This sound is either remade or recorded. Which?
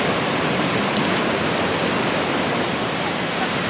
recorded